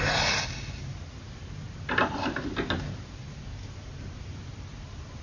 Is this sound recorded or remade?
recorded